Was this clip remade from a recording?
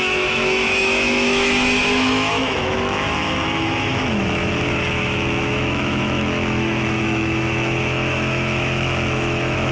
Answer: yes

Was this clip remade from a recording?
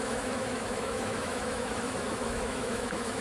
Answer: yes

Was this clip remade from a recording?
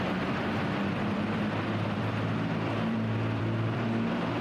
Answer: yes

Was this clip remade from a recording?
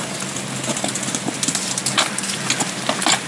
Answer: no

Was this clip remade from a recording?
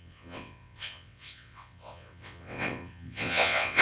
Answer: yes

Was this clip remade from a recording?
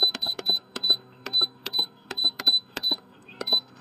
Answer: yes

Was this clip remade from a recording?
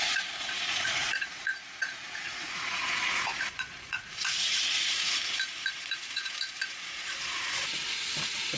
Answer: yes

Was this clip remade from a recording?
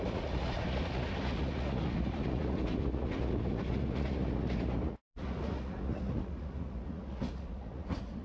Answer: yes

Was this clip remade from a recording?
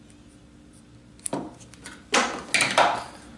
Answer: no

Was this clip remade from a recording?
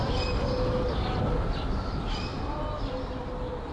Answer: no